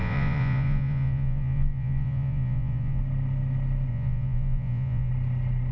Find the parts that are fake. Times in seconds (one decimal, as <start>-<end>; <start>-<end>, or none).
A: 0.0-3.0; 3.9-5.1

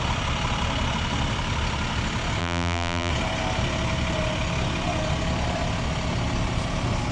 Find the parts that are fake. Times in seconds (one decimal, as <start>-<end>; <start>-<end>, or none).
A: 2.4-3.1

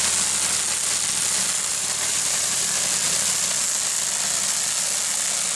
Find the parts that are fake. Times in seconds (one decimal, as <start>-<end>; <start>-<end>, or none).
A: 1.7-2.7

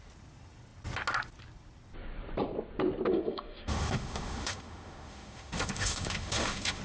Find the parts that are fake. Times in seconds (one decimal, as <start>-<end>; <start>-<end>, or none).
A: 3.1-6.8

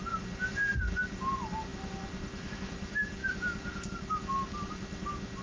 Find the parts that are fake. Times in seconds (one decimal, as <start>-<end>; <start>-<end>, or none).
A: none

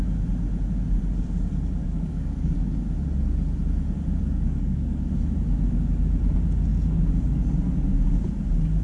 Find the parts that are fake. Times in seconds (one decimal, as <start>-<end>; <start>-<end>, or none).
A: 1.8-2.7; 4.2-5.1

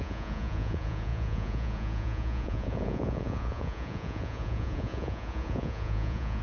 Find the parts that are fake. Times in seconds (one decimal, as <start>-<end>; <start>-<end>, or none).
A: 0.0-6.4

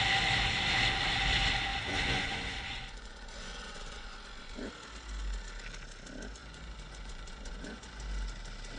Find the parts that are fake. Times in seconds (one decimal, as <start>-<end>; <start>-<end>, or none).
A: 1.7-4.7; 6.4-8.0